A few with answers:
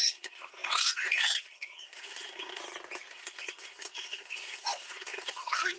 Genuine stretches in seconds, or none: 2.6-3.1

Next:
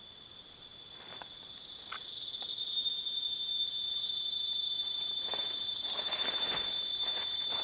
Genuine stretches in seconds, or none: 0.0-7.6

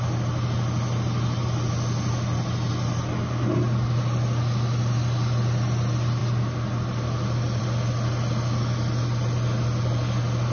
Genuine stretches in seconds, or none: 0.0-10.5

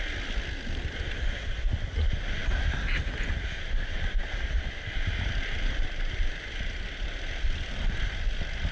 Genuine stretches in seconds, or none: 0.0-8.7